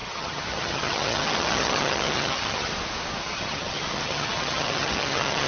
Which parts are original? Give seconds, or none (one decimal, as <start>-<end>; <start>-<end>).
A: 2.7-3.2